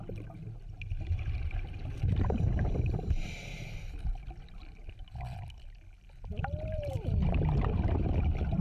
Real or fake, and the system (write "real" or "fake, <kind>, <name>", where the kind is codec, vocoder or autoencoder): real